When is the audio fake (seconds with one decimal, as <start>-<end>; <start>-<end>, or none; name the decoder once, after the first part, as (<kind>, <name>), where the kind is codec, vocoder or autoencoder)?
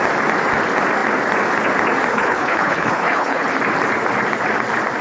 2.1-3.5 (codec, HILCodec)